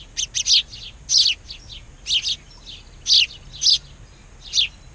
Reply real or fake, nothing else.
real